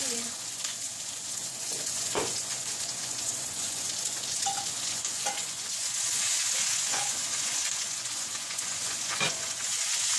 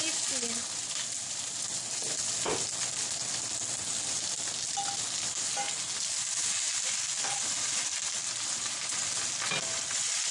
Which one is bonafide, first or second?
second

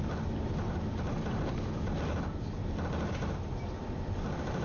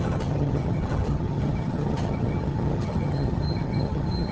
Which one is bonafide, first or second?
first